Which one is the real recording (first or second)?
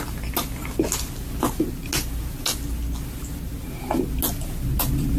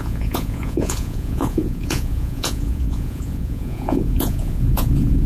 first